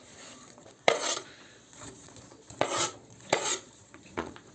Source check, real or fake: fake